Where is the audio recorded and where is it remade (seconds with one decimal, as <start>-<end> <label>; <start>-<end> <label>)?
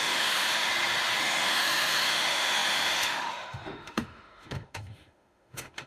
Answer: 0.0-0.7 remade; 0.7-1.2 recorded; 1.2-5.9 remade